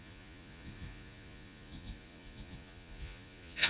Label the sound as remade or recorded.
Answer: remade